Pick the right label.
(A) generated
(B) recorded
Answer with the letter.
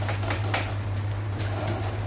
A